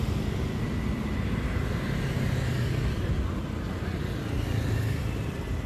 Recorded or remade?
recorded